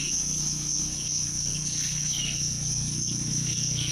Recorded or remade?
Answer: remade